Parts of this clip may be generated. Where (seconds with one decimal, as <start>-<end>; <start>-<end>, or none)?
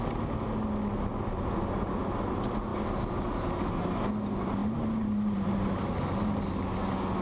4.6-5.5